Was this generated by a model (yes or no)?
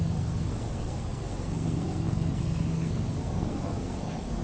yes